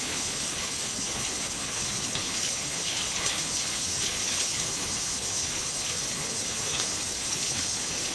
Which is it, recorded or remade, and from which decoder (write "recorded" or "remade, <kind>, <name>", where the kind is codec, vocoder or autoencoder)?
remade, codec, HILCodec